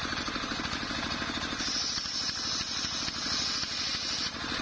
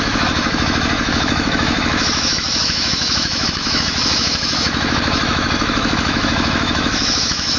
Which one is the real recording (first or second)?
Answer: first